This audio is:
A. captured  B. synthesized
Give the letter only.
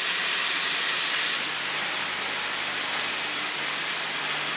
A